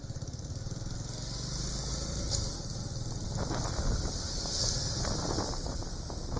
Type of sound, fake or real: real